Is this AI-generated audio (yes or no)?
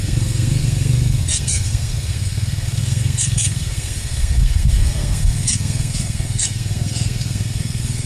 yes